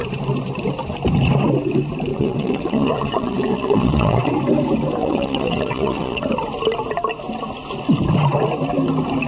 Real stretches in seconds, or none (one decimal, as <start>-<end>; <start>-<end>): 0.0-2.1; 4.3-5.0; 6.2-9.3